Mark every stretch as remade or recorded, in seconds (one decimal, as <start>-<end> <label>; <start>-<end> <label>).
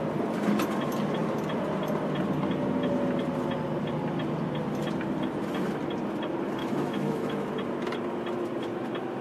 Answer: 0.0-6.6 recorded; 6.6-7.5 remade; 7.5-9.2 recorded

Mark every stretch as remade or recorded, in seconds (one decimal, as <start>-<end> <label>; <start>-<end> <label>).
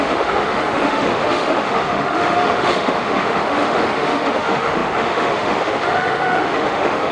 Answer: 0.0-7.1 remade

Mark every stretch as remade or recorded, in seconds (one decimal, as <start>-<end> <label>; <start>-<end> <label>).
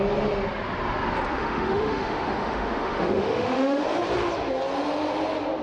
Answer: 0.0-1.3 recorded; 1.3-3.8 remade; 3.8-5.6 recorded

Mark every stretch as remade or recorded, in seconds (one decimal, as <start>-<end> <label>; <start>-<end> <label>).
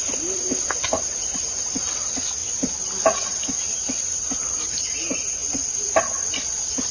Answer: 0.0-6.9 recorded